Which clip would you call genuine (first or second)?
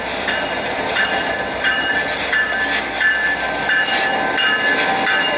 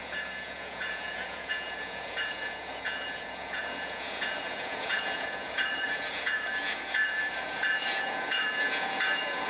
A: first